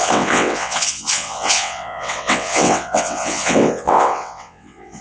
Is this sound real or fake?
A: fake